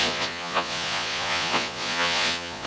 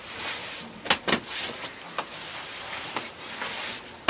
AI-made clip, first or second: first